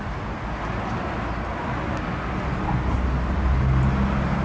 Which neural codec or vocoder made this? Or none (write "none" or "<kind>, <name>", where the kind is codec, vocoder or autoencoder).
none